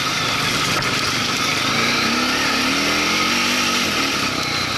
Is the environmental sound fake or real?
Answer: real